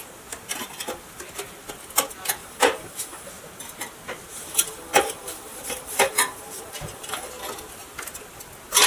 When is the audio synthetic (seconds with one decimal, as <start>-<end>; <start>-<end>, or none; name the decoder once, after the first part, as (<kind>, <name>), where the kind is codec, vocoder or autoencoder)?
2.4-3.3 (vocoder, BigVGAN v2); 4.3-7.3